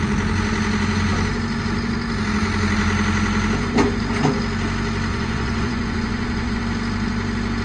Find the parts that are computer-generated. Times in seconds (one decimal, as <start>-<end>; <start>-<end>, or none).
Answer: 5.1-6.6